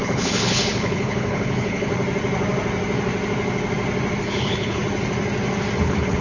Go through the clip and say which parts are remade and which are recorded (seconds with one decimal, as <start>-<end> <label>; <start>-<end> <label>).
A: 0.0-1.9 remade; 1.9-4.2 recorded; 4.2-4.8 remade; 4.8-5.8 recorded; 5.8-6.2 remade